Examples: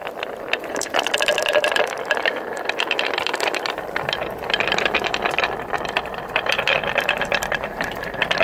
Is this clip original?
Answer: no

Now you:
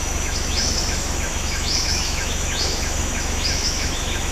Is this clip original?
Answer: no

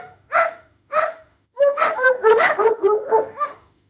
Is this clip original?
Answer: no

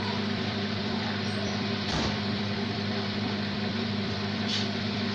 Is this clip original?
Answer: no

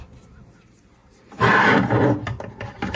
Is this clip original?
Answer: yes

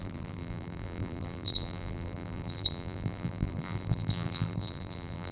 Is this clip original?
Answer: no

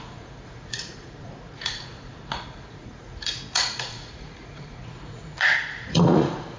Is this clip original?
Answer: no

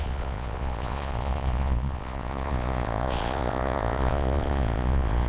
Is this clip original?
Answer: no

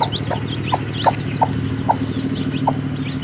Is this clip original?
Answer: yes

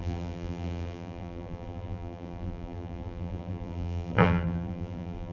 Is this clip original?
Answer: no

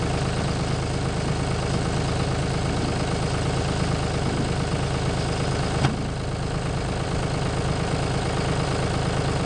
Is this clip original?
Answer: yes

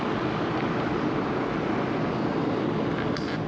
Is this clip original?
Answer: yes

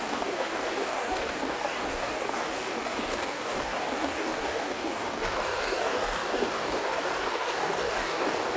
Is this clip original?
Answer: no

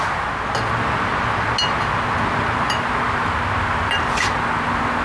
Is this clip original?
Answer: yes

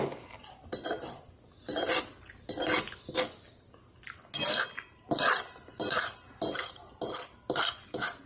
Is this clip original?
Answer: yes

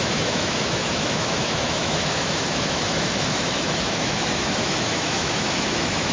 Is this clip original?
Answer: no